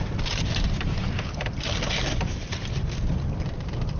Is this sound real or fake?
real